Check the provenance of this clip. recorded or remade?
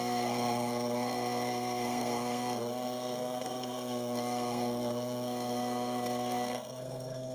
remade